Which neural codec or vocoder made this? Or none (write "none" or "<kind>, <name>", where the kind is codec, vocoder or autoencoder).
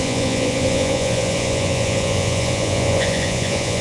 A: vocoder, Vocos